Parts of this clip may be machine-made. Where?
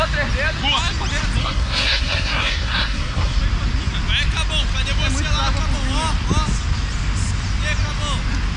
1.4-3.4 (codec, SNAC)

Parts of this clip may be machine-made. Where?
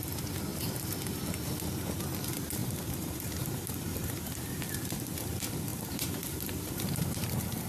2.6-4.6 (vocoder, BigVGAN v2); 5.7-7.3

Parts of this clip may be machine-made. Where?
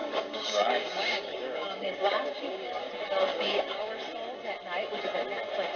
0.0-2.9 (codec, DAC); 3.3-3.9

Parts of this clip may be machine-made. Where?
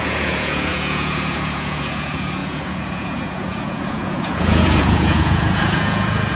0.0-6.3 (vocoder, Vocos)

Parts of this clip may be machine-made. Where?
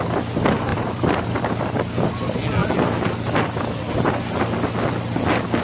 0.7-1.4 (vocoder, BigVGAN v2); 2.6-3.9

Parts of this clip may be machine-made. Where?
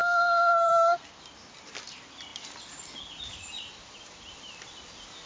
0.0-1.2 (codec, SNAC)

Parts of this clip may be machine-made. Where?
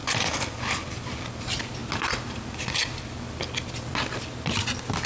none